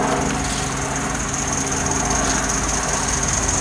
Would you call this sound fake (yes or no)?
no